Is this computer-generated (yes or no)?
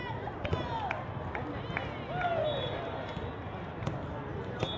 no